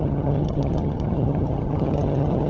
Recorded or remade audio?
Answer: remade